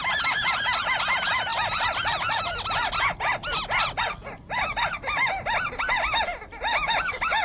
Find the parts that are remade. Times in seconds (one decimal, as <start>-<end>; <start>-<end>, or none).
none